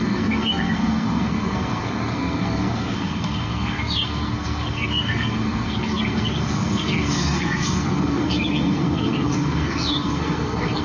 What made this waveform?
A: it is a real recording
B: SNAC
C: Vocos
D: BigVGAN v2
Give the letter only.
B